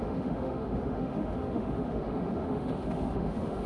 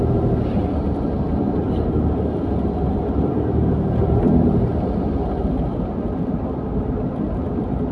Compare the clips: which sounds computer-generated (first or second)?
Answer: first